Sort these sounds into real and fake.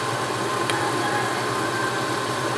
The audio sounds real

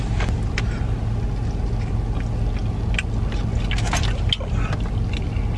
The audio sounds real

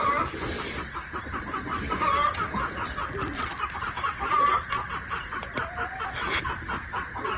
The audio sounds real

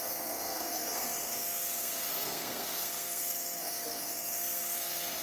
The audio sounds fake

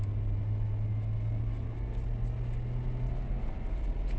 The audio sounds real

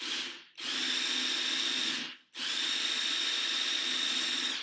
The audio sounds real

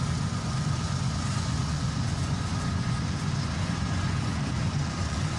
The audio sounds fake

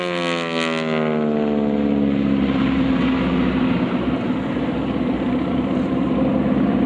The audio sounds real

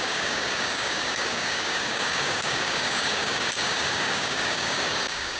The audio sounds fake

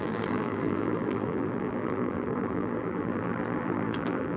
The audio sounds fake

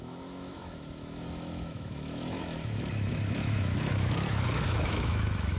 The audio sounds fake